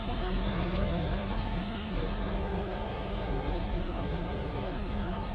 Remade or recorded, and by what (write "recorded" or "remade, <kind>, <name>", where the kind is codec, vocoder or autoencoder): remade, codec, SNAC